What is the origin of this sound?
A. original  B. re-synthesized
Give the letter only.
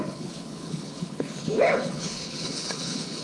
B